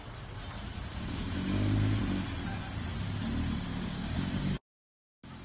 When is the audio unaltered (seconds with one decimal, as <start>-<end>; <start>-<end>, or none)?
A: 0.0-0.9; 2.0-3.7; 4.3-5.4